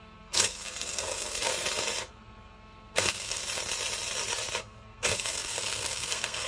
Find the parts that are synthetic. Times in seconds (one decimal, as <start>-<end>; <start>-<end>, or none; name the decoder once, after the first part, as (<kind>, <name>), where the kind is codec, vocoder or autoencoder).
0.0-1.5 (codec, SNAC); 2.1-3.4; 4.6-6.5